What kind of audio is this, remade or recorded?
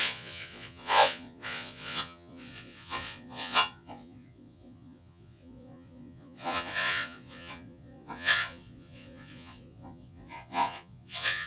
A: remade